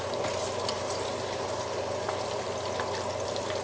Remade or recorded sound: recorded